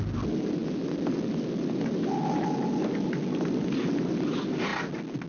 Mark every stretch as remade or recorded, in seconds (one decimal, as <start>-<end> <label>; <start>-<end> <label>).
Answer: 0.0-5.3 recorded